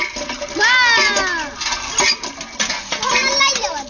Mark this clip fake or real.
real